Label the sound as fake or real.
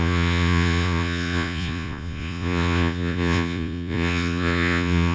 fake